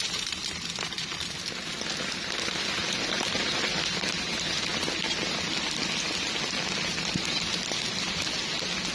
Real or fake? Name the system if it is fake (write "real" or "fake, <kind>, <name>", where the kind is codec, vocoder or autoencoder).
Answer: real